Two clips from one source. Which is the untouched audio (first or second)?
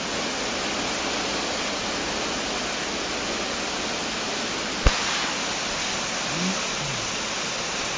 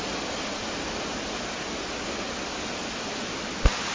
first